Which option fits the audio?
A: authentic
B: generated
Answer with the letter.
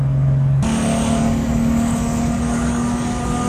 B